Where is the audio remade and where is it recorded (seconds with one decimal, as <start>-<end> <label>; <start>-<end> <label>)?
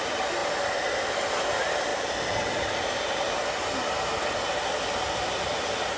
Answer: 0.0-6.0 recorded